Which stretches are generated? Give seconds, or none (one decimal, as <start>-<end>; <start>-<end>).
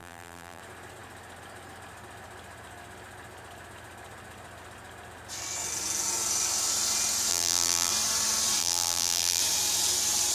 0.0-0.6; 7.3-7.9; 8.6-9.4